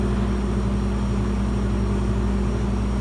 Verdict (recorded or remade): recorded